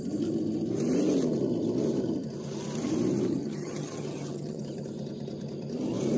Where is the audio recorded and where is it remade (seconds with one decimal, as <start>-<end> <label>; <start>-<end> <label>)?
0.0-3.4 recorded; 3.4-4.6 remade; 4.6-6.2 recorded